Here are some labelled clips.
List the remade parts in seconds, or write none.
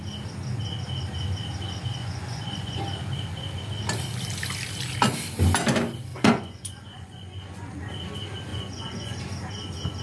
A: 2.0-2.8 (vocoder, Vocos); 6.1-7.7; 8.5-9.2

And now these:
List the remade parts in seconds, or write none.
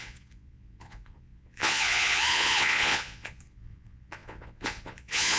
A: 0.0-5.4 (vocoder, Vocos)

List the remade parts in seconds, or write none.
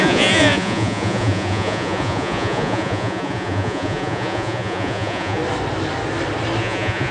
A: 0.0-5.4 (vocoder, Vocos); 6.6-7.1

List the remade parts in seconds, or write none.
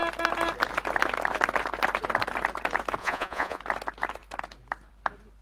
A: 3.0-3.6 (vocoder, Vocos)